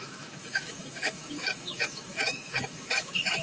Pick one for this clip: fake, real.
fake